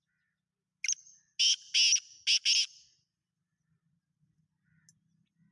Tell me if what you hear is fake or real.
real